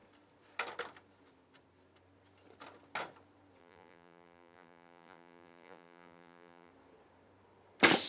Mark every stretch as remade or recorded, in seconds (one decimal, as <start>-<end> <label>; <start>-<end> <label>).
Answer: 0.0-3.6 recorded; 3.6-6.7 remade; 6.7-8.1 recorded